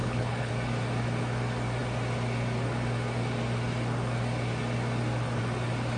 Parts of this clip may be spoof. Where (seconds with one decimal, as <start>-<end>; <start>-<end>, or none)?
0.0-0.5